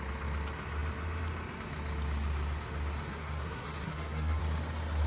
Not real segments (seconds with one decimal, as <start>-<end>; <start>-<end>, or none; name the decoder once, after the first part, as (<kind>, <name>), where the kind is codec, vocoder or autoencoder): 3.1-4.4 (codec, SNAC)

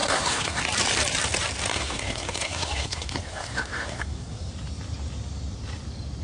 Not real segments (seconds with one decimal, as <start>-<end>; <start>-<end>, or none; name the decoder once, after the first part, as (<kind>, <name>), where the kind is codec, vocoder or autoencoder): 0.0-0.6 (codec, SNAC); 1.7-4.5

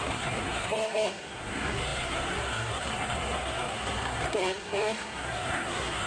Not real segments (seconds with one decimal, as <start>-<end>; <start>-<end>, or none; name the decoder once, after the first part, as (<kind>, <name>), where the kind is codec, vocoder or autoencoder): 0.0-6.1 (codec, SNAC)

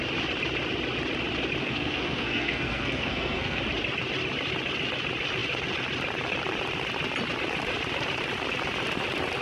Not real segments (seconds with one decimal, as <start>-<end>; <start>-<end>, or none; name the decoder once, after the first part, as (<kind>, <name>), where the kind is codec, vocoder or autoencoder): 1.6-3.6 (codec, SNAC)

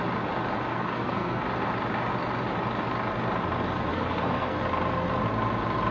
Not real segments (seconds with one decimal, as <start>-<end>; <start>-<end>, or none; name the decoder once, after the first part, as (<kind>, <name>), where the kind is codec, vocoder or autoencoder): 0.7-1.4 (codec, SNAC); 3.9-4.6

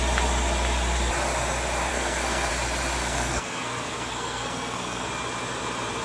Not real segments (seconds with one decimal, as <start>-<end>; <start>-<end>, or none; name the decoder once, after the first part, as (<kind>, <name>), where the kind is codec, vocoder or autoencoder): 1.9-2.5 (codec, SNAC); 3.0-5.1

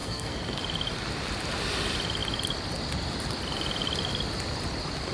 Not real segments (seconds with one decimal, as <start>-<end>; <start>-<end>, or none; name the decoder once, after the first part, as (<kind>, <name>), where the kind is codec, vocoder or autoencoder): 0.0-0.6 (codec, SNAC)